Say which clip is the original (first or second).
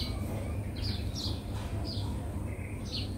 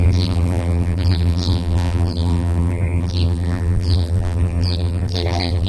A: first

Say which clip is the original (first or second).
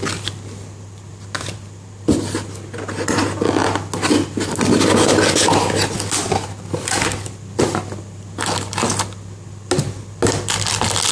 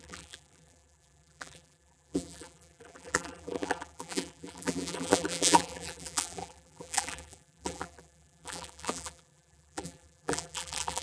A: first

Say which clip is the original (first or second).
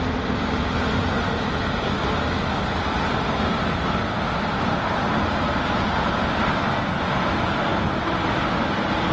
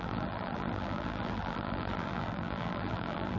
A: first